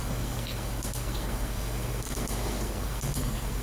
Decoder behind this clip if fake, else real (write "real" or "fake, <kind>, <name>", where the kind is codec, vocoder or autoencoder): fake, codec, SNAC